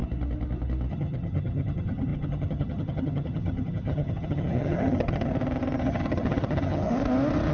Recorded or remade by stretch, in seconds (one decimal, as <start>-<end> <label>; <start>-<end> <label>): 0.0-0.9 recorded; 0.9-5.3 remade; 5.3-5.8 recorded; 5.8-6.9 remade; 6.9-7.5 recorded